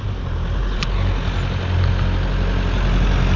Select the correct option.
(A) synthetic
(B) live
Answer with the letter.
B